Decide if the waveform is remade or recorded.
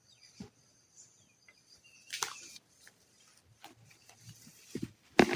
recorded